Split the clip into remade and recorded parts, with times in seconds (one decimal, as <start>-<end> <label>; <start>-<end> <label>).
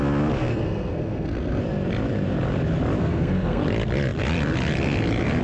0.0-0.5 recorded; 0.5-1.6 remade; 1.6-3.0 recorded; 3.0-3.6 remade; 3.6-5.4 recorded